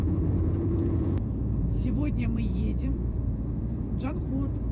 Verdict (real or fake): fake